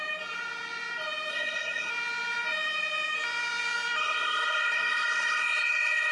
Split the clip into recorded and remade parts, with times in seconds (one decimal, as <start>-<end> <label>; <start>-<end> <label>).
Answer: 0.0-1.3 recorded; 1.3-1.9 remade; 1.9-4.0 recorded; 4.0-6.1 remade